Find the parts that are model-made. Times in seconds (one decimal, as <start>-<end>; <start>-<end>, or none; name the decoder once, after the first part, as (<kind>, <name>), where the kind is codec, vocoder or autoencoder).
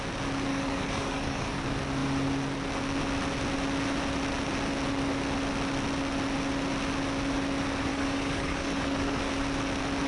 0.5-1.6 (codec, DAC); 7.9-9.2